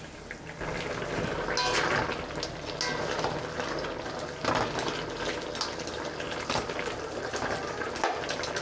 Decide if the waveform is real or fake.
real